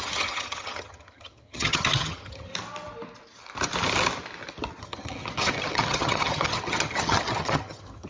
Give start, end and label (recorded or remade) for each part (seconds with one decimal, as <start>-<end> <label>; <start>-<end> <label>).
0.0-2.5 remade; 2.5-4.8 recorded; 4.8-8.1 remade